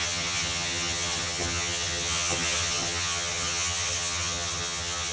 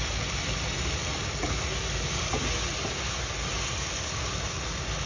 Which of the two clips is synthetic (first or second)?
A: first